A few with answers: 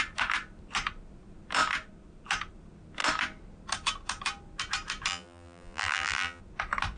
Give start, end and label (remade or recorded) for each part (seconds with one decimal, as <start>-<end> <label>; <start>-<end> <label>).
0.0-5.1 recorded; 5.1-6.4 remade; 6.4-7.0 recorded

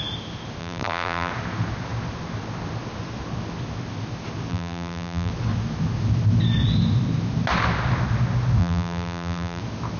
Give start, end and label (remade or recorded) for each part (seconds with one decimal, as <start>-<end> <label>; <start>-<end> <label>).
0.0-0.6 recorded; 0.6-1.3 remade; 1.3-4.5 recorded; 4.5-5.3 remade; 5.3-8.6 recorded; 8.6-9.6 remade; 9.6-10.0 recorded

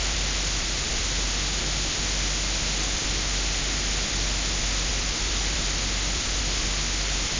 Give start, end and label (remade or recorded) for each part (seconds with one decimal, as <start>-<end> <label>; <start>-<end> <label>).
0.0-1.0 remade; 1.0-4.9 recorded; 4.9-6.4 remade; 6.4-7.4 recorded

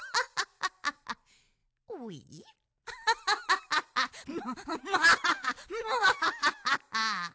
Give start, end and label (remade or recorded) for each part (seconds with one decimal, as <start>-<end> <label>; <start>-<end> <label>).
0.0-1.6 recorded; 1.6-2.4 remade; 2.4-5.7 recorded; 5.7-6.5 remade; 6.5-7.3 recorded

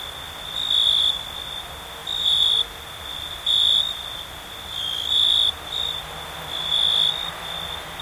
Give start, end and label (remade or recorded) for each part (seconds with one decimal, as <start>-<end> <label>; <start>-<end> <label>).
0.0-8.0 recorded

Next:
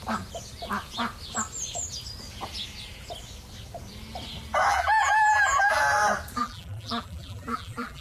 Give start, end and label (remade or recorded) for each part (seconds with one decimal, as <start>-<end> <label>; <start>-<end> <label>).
0.0-4.7 recorded; 4.7-5.8 remade; 5.8-6.4 recorded; 6.4-8.0 remade

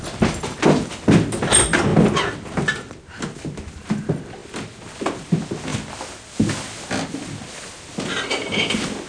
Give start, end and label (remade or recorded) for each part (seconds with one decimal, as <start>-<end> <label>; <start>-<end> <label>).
0.0-9.1 recorded